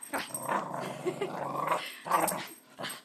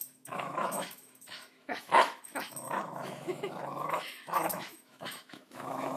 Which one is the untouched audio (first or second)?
first